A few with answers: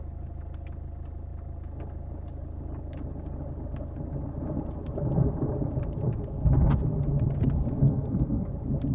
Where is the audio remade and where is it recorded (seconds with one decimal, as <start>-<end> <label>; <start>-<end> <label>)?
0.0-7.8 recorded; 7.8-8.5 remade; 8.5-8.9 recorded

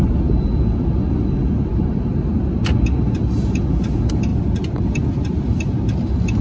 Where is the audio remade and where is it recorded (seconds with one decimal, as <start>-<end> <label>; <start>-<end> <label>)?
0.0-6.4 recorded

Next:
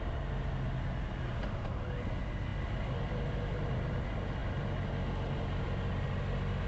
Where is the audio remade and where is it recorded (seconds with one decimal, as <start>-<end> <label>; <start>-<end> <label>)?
0.0-6.7 recorded